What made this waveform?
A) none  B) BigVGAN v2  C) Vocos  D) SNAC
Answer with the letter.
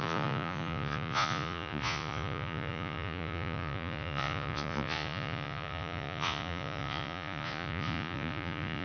C